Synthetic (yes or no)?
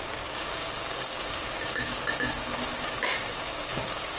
yes